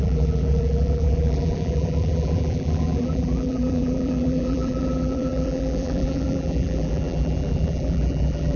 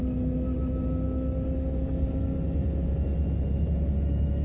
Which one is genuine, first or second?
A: second